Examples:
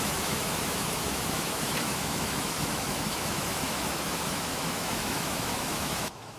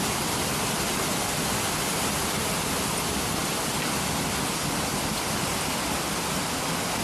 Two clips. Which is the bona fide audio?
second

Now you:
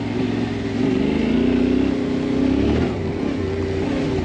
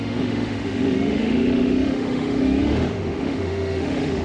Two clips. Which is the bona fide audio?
first